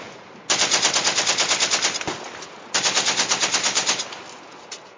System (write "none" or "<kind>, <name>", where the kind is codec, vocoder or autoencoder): none